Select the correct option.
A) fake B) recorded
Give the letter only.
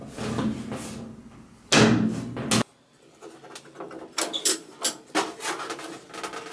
B